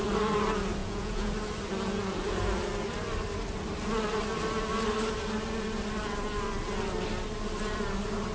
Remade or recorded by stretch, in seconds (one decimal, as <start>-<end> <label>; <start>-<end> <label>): 0.0-0.8 recorded; 0.8-1.3 remade; 1.3-8.3 recorded